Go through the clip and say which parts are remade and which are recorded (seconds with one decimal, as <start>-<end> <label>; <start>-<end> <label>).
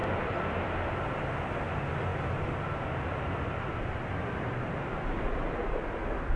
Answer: 0.0-6.4 recorded